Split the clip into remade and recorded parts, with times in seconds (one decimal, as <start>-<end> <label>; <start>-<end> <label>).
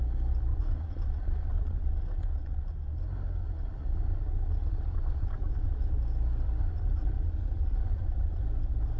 0.0-0.5 recorded; 0.5-2.7 remade; 2.7-3.4 recorded; 3.4-5.8 remade; 5.8-6.6 recorded; 6.6-8.4 remade; 8.4-9.0 recorded